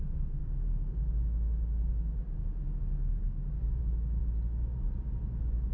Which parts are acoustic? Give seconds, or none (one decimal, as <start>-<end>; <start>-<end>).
4.2-5.7